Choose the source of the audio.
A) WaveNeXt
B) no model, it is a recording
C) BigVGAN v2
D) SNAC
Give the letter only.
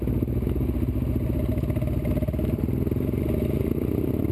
B